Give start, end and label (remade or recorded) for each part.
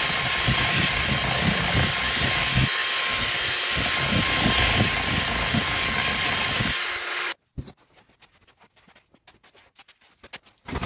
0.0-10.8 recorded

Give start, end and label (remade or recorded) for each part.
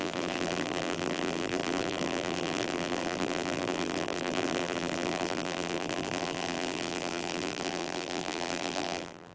0.0-9.3 remade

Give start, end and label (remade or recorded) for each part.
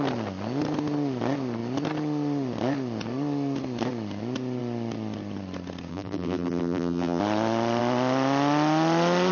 0.0-5.9 recorded; 5.9-7.2 remade; 7.2-9.3 recorded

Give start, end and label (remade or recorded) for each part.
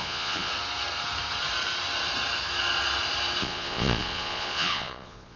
0.0-0.5 remade; 0.5-3.4 recorded; 3.4-5.4 remade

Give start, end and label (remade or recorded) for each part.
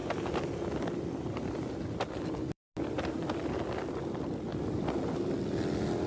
0.0-6.1 recorded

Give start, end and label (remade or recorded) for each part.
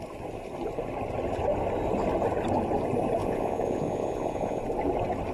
0.0-3.2 recorded; 3.2-4.6 remade; 4.6-5.3 recorded